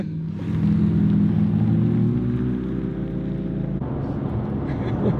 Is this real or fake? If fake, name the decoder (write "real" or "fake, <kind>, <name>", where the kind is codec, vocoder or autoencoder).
real